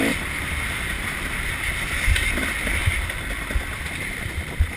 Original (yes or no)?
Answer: yes